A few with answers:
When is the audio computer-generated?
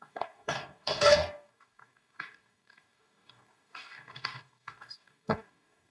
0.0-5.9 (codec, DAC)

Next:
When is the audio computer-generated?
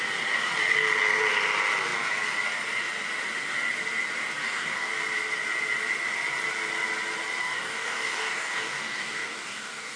4.4-4.9 (codec, DAC); 7.4-10.0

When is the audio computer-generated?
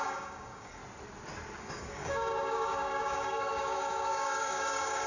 0.0-0.8 (codec, DAC); 1.6-5.1